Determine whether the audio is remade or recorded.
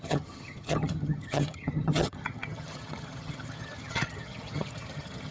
remade